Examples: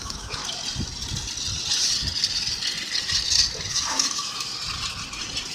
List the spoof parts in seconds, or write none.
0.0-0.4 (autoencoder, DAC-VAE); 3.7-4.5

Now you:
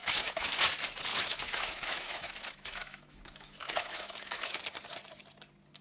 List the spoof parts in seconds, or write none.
0.0-0.5 (autoencoder, DAC-VAE); 1.1-4.6

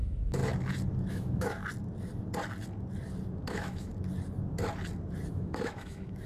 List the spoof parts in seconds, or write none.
0.0-0.4 (autoencoder, DAC-VAE); 1.1-1.6; 3.5-3.9; 5.3-6.3

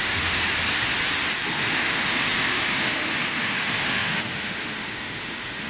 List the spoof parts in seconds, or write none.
0.0-0.4 (autoencoder, DAC-VAE); 1.5-5.7

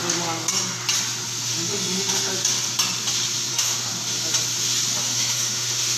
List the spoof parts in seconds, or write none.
1.4-2.3 (autoencoder, DAC-VAE); 3.5-3.9; 5.0-6.0